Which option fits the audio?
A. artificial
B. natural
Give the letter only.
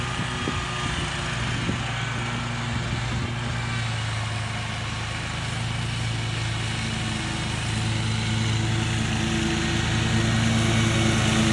B